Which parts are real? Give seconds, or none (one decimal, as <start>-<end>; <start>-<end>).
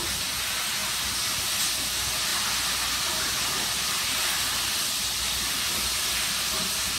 0.0-7.0